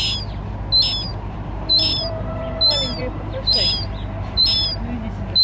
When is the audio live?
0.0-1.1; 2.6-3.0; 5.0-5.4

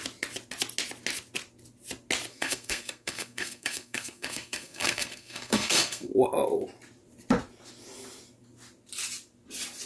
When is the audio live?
0.0-2.3; 6.1-9.9

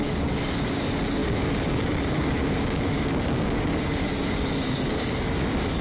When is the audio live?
none